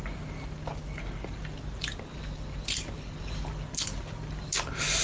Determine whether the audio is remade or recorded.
recorded